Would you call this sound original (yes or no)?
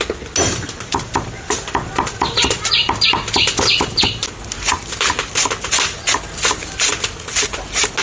yes